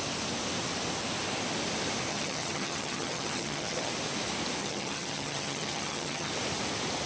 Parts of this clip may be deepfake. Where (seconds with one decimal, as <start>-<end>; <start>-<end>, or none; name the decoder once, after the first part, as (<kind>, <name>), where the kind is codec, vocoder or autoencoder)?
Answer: 2.1-3.9 (vocoder, HiFi-GAN); 4.6-6.3